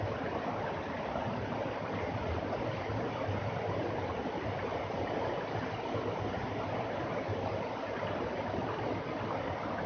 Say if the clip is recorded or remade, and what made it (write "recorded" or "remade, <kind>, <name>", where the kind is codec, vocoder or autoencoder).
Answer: recorded